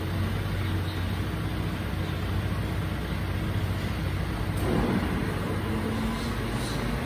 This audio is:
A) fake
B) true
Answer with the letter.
B